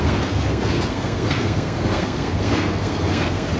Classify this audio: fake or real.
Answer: fake